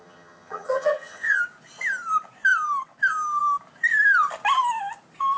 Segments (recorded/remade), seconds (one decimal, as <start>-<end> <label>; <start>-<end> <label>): 0.0-1.4 remade; 1.4-5.4 recorded